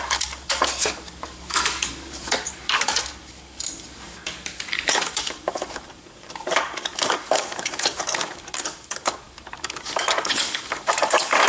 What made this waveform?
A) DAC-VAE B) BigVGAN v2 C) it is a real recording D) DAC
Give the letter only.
D